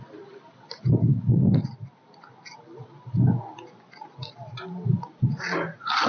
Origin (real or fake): real